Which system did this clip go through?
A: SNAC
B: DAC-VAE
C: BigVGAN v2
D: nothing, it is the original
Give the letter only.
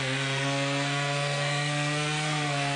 A